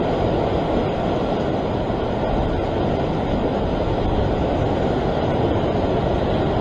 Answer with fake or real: real